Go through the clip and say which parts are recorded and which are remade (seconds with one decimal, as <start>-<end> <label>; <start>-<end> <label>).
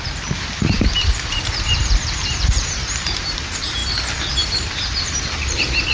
0.0-3.8 remade; 3.8-4.3 recorded; 4.3-5.9 remade